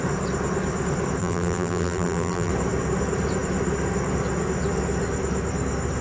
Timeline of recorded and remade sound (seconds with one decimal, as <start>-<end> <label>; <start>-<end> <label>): 0.0-1.2 recorded; 1.2-2.5 remade; 2.5-6.0 recorded

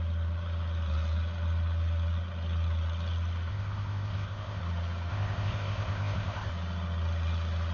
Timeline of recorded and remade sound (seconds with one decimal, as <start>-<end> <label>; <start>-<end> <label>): 0.0-3.5 recorded; 3.5-4.6 remade; 4.6-5.1 recorded; 5.1-6.5 remade; 6.5-7.7 recorded

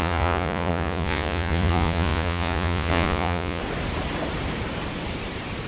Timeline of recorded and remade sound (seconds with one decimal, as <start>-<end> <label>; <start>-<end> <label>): 0.0-3.6 remade; 3.6-5.7 recorded

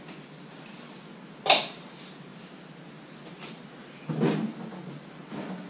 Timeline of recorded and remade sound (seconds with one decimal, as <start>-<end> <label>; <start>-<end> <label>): 0.0-5.7 recorded